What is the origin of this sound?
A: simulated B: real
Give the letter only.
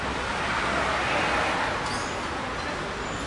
B